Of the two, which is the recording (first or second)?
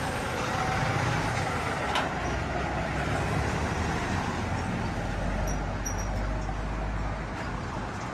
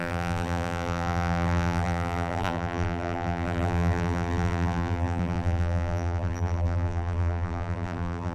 first